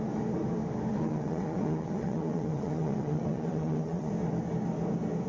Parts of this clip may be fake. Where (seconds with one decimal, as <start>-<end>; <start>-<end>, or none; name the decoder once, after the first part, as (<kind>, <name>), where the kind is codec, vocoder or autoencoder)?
0.9-4.1 (vocoder, WaveNeXt)